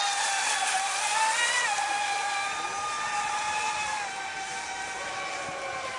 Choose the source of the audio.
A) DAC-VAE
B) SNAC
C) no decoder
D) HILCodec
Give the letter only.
C